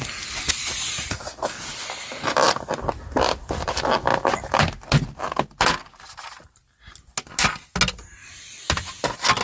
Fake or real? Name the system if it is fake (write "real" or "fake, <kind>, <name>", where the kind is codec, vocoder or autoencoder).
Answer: real